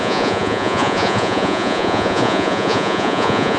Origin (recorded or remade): remade